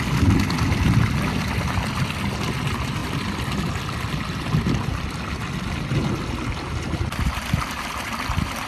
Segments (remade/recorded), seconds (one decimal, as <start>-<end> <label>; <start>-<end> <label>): 0.0-8.7 recorded